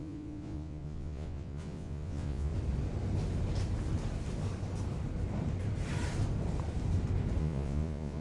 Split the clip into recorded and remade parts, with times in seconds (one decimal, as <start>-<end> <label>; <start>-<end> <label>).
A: 0.0-2.5 remade; 2.5-7.4 recorded; 7.4-8.2 remade